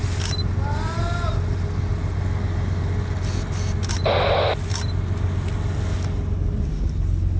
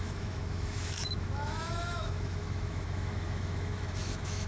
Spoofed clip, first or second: second